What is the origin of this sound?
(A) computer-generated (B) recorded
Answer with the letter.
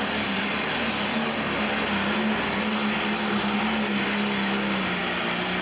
B